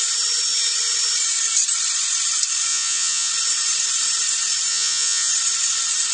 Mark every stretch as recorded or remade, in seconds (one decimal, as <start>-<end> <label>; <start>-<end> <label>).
0.0-2.7 recorded; 2.7-3.3 remade; 3.3-4.7 recorded; 4.7-5.3 remade; 5.3-6.1 recorded